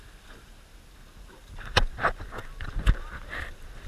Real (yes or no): yes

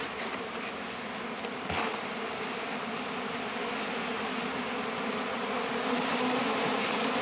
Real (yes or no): yes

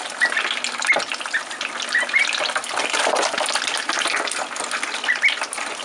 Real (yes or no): yes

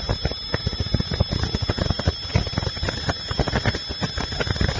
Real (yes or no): yes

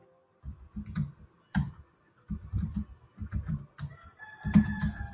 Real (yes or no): yes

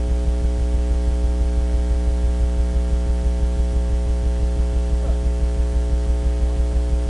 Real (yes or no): yes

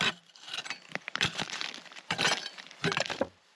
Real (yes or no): no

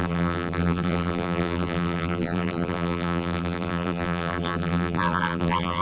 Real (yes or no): no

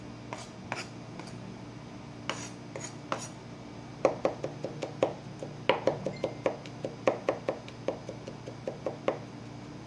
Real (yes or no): yes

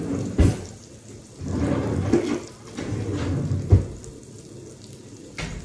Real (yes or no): yes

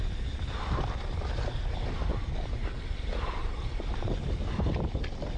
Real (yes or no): no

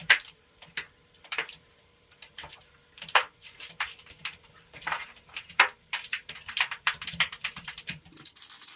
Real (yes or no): no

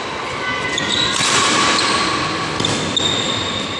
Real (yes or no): yes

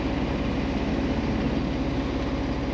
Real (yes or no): yes